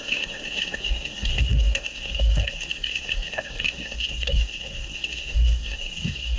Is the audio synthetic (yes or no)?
yes